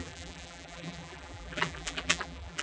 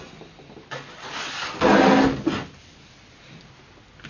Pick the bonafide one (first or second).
second